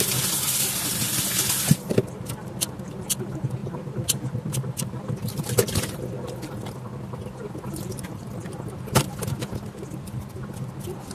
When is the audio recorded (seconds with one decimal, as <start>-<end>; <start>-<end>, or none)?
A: none